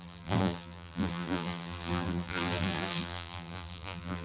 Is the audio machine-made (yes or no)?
yes